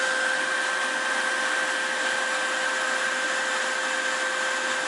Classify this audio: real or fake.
real